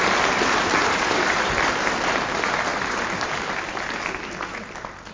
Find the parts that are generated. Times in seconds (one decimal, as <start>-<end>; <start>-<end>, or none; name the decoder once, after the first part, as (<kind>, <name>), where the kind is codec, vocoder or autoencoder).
0.8-1.5 (vocoder, BigVGAN v2); 2.7-3.3